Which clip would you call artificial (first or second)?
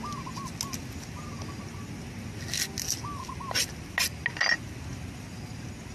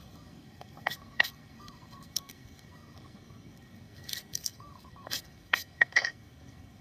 second